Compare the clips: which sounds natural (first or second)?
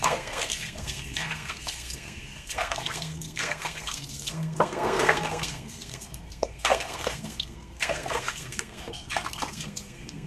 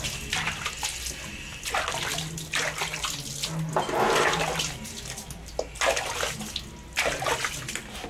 second